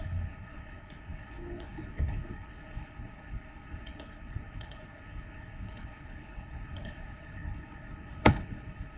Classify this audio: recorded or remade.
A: remade